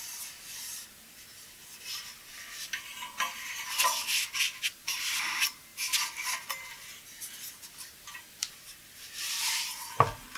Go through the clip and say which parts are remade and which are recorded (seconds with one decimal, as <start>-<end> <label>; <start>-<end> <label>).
0.0-1.6 remade; 1.6-2.8 recorded; 2.8-5.7 remade; 5.7-8.2 recorded; 8.2-10.4 remade